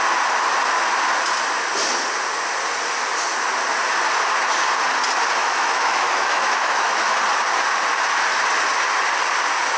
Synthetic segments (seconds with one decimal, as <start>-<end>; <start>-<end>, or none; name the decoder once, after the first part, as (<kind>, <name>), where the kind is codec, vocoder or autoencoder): 5.4-7.2 (autoencoder, DAC-VAE)

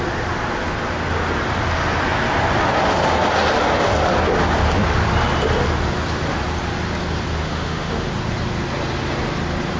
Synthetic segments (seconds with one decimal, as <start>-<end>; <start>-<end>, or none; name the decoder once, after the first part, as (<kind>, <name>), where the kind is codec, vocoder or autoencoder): 7.4-8.1 (autoencoder, DAC-VAE)